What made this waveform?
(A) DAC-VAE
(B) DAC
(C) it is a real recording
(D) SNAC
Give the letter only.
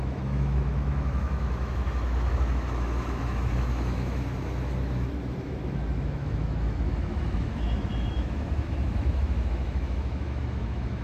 A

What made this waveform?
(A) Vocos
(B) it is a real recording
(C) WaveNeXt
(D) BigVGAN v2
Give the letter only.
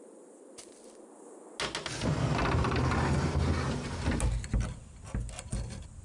B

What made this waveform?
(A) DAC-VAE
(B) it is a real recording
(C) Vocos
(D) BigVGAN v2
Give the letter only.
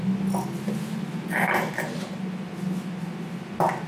B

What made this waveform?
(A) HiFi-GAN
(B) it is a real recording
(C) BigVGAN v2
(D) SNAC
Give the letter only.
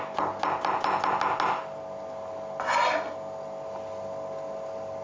B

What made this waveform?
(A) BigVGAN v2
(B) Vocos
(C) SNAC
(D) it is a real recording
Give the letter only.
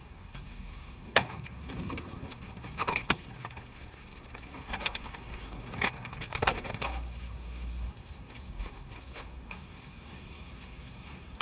C